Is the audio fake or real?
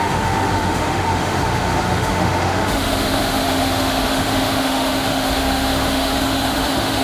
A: fake